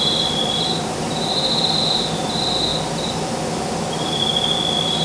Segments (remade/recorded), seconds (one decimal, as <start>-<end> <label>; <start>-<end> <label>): 0.0-5.0 recorded